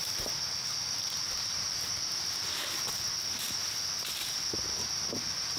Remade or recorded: recorded